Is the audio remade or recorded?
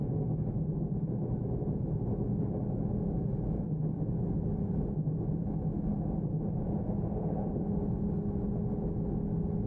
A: recorded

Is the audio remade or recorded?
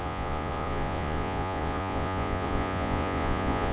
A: remade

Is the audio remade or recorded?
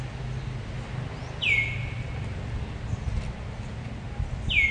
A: recorded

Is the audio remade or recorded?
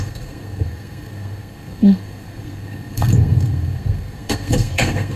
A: remade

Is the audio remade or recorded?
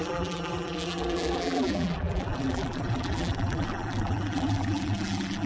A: remade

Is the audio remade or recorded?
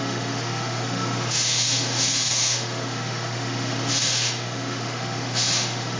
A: remade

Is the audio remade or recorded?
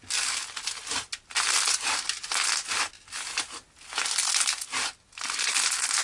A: recorded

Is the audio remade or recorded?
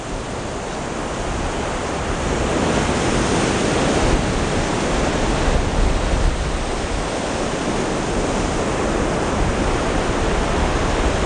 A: recorded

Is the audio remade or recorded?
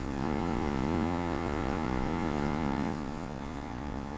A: remade